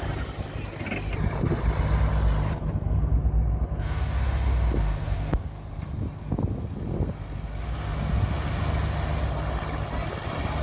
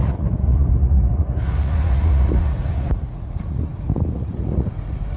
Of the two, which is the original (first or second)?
first